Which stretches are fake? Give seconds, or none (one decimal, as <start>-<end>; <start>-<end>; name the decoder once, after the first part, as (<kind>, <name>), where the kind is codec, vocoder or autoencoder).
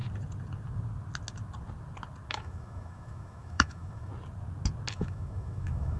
2.3-4.1 (autoencoder, DAC-VAE); 4.9-6.0